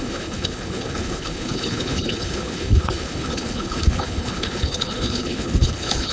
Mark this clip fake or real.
fake